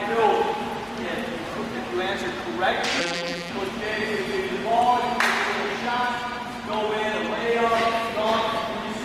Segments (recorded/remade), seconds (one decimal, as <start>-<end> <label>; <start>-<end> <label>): 0.0-3.0 recorded; 3.0-3.5 remade; 3.5-9.0 recorded